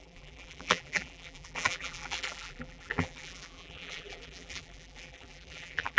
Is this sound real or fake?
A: fake